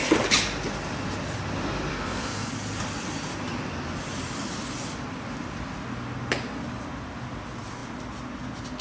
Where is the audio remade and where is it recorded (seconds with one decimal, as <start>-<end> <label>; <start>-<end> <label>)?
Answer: 0.0-1.9 recorded; 1.9-2.5 remade; 2.5-8.8 recorded